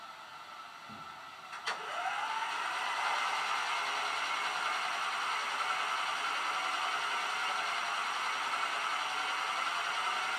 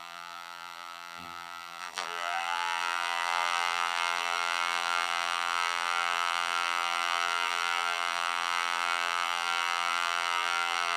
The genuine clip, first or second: first